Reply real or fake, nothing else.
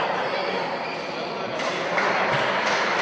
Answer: real